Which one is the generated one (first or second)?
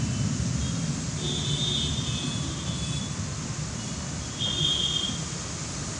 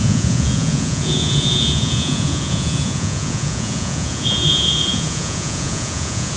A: second